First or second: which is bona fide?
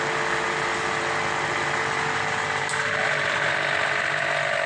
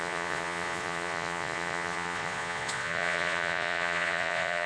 first